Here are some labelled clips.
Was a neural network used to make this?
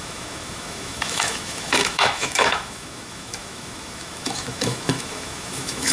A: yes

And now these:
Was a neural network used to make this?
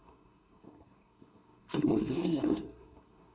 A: yes